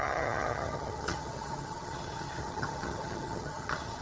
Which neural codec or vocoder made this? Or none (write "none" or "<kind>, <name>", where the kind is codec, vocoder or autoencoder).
vocoder, HiFi-GAN